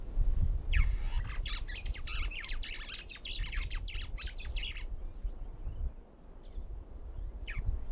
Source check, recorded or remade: recorded